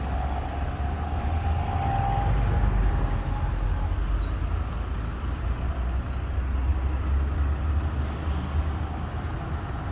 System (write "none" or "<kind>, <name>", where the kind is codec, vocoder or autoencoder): none